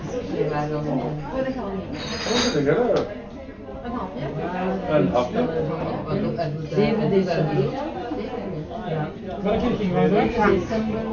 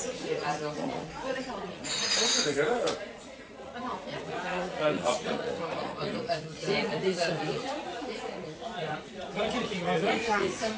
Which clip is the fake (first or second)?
second